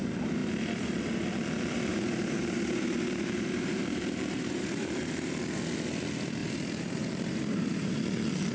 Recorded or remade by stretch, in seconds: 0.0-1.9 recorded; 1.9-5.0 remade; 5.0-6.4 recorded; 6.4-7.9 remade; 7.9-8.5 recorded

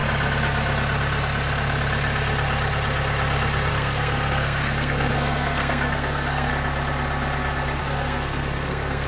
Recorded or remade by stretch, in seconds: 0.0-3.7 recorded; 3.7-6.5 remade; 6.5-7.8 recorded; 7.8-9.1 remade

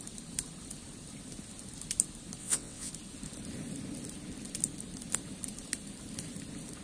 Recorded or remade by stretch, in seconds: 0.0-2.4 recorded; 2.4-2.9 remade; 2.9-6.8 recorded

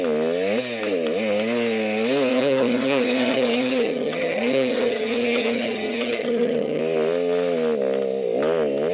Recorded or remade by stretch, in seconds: 0.0-2.3 recorded; 2.3-6.8 remade; 6.8-8.9 recorded